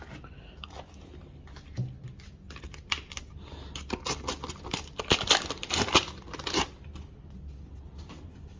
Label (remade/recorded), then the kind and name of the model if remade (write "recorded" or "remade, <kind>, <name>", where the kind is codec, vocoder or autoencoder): recorded